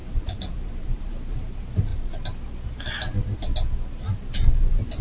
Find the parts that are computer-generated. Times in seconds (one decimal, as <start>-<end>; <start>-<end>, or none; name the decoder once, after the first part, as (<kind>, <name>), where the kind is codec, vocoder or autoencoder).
0.0-1.9 (vocoder, BigVGAN v2); 4.5-5.0